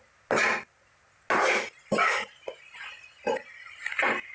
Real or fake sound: real